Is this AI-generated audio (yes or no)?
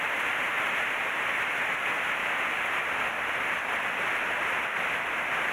no